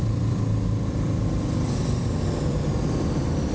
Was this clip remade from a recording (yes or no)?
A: yes